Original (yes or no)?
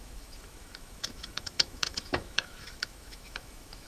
no